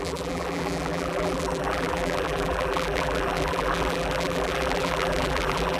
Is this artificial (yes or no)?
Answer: yes